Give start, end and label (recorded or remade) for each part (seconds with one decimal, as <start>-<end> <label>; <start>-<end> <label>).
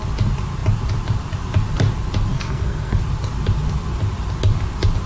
0.0-2.3 recorded; 2.3-3.0 remade; 3.0-5.1 recorded